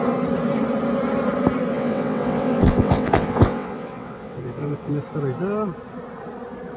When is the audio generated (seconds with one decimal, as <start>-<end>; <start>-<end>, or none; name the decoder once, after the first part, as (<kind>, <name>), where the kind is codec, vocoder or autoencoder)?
1.7-4.9 (vocoder, WaveNeXt)